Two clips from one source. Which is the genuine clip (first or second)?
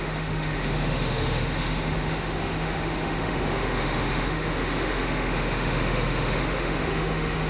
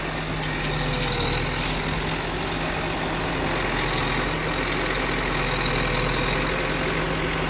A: second